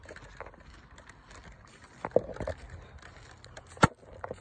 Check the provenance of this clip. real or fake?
real